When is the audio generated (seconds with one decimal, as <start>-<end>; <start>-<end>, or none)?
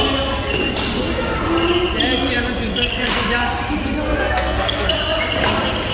2.7-3.2; 4.1-4.9